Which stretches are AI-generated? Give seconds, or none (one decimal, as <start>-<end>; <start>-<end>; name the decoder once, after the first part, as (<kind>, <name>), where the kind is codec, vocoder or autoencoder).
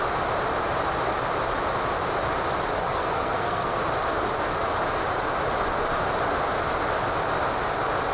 2.8-3.8 (codec, SNAC)